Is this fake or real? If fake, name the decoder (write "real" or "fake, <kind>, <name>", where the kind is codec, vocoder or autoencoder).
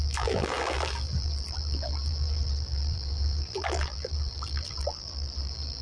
fake, vocoder, BigVGAN v2